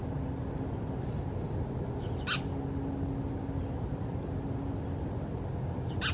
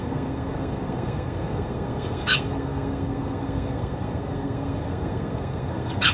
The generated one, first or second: second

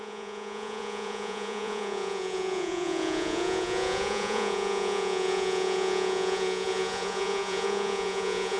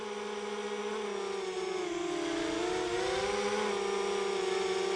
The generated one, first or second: first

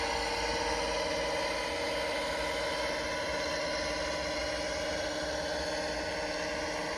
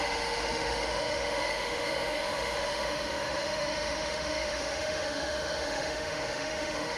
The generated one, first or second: second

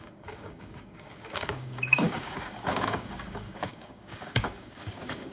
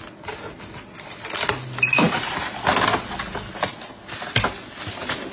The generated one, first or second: first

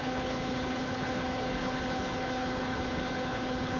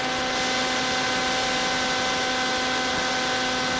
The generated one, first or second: first